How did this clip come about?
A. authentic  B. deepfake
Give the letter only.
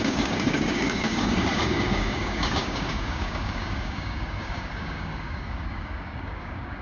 B